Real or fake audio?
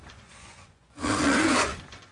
fake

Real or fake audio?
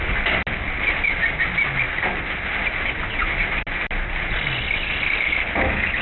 real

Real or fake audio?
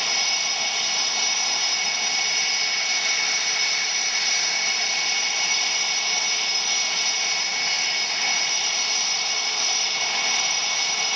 real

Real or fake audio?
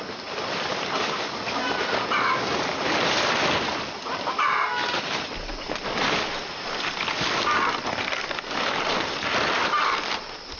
real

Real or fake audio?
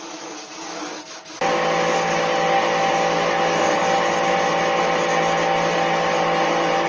real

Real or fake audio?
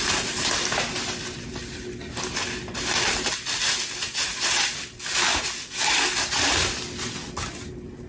real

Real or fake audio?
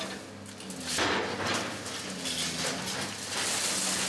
real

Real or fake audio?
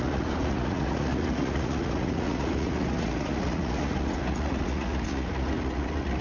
fake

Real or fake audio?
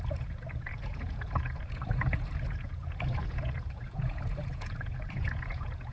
fake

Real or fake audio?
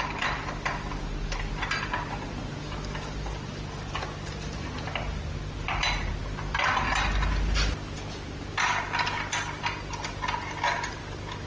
real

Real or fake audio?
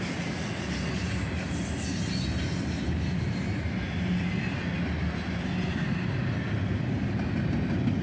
real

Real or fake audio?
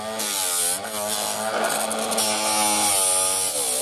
real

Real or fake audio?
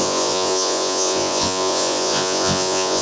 fake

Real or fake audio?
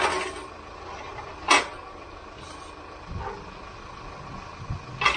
real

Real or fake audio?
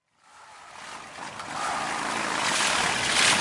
real